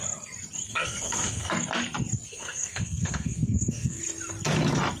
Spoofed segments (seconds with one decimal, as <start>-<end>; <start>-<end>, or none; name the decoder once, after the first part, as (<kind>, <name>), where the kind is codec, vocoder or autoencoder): 0.7-1.5 (codec, SNAC); 2.3-4.0